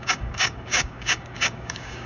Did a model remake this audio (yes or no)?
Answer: yes